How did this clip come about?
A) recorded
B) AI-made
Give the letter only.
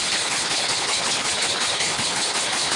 B